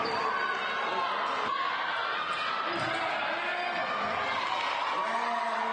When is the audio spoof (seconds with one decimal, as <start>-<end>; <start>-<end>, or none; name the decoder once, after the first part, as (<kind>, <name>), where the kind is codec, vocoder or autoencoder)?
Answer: none